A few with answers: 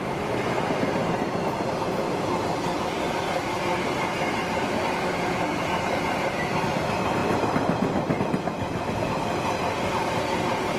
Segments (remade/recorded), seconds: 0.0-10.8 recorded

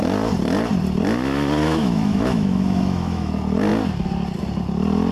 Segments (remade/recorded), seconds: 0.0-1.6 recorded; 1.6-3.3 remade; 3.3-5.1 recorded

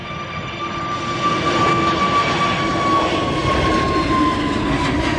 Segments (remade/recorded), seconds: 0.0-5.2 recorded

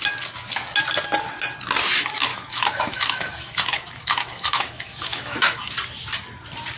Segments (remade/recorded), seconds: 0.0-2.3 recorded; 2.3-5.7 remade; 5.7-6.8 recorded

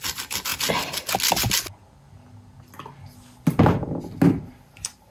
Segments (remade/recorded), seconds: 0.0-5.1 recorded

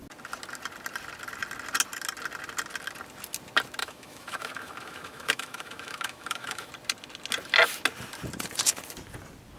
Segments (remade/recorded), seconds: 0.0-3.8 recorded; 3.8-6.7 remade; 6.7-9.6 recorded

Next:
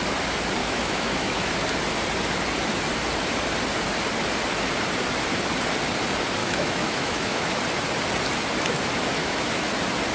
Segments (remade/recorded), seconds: 0.0-0.6 recorded; 0.6-1.5 remade; 1.5-6.4 recorded; 6.4-7.6 remade; 7.6-9.2 recorded; 9.2-9.7 remade; 9.7-10.1 recorded

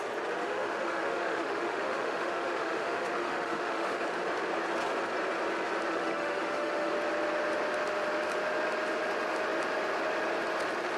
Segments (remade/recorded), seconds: 0.0-0.4 recorded; 0.4-4.0 remade; 4.0-5.9 recorded; 5.9-6.9 remade; 6.9-11.0 recorded